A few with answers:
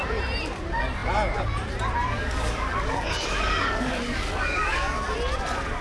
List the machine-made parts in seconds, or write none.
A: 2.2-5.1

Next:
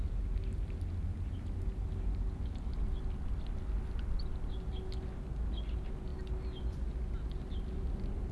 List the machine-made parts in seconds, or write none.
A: none

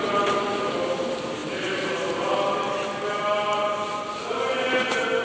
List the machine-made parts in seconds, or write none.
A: none